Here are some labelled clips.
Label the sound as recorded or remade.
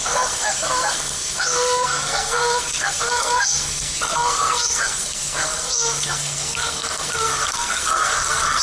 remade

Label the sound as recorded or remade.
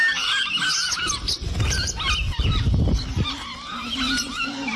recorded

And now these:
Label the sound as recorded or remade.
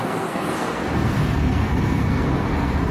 remade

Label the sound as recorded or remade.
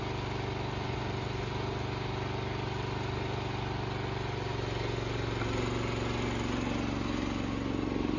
recorded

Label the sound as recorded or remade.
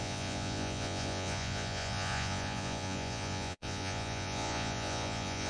remade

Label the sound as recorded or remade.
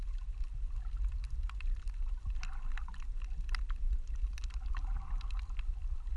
recorded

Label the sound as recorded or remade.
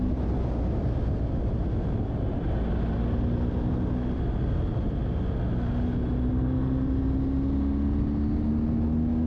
recorded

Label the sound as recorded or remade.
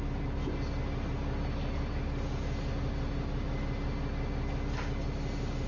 recorded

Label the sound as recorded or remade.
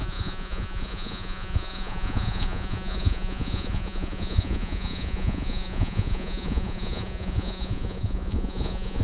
remade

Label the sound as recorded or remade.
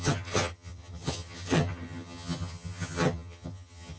remade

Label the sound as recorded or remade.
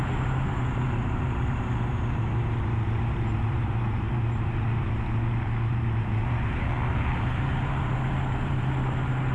remade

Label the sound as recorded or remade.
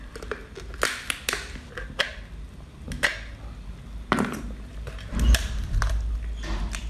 recorded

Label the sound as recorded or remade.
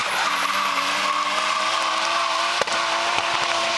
remade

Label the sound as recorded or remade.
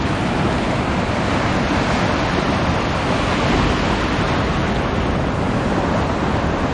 recorded